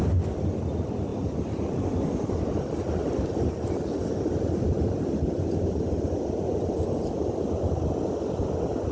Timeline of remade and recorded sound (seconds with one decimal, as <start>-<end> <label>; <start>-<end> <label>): 0.0-1.1 recorded; 1.1-5.7 remade; 5.7-8.9 recorded